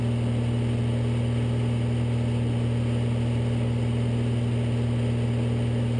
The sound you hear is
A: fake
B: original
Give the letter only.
B